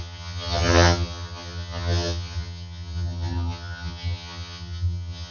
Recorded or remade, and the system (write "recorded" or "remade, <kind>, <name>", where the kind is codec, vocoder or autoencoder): remade, vocoder, HiFi-GAN